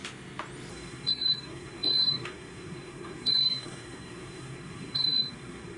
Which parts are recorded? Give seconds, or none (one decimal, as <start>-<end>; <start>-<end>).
0.0-0.7